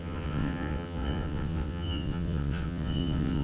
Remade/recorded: remade